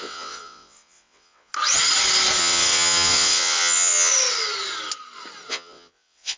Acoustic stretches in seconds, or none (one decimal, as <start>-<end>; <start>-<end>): 1.5-2.4; 4.1-5.5